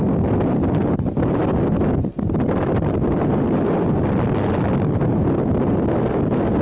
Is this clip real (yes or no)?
yes